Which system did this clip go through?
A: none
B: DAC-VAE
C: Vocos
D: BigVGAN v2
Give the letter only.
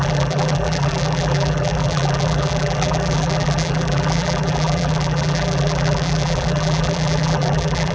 D